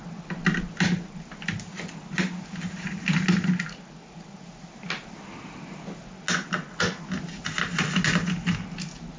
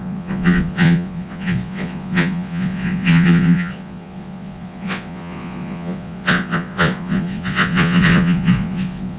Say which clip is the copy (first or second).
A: second